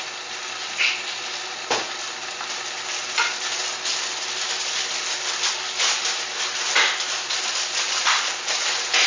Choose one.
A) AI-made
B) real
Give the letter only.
B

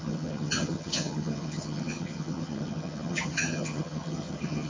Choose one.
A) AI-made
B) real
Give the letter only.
A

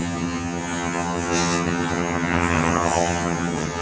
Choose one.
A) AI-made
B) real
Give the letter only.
A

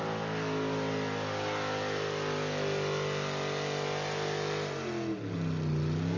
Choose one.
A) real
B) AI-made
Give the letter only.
A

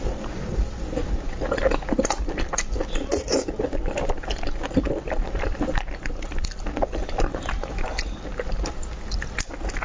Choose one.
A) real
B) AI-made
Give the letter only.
A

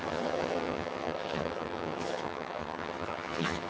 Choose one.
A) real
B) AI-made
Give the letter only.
B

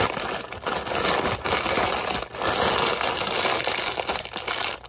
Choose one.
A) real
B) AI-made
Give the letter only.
A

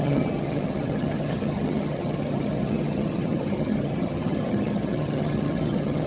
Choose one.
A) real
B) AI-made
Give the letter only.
B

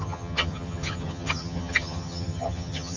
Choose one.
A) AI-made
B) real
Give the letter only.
A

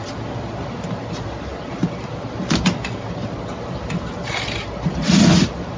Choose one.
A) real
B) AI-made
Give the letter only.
A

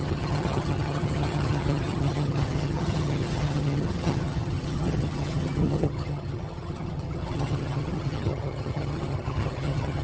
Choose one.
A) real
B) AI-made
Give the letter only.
B